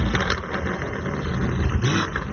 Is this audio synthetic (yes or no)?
no